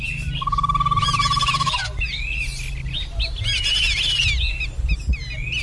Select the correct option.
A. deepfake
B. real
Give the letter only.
B